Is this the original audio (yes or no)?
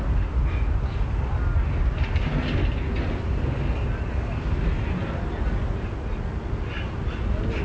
yes